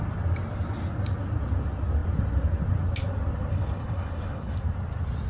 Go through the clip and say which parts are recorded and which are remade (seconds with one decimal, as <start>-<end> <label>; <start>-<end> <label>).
0.0-3.5 recorded; 3.5-4.6 remade; 4.6-5.3 recorded